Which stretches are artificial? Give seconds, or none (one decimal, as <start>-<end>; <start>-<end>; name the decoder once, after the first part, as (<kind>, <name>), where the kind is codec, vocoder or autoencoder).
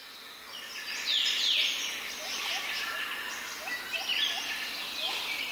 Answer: none